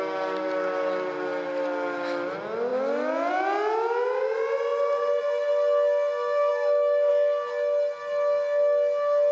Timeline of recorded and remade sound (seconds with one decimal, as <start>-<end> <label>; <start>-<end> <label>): 0.0-6.5 recorded; 6.5-7.1 remade; 7.1-9.3 recorded